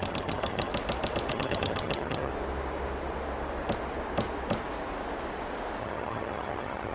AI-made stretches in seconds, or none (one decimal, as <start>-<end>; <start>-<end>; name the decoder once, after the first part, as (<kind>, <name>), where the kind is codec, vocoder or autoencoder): 0.0-0.7 (vocoder, HiFi-GAN); 1.3-2.3; 5.8-6.9